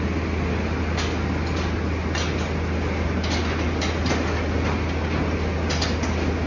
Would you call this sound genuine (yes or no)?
yes